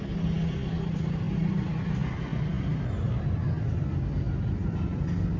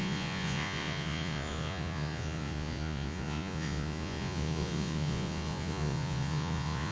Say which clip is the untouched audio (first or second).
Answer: first